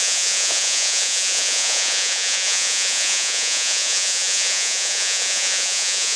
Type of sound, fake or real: fake